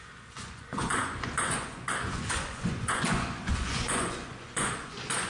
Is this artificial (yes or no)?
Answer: yes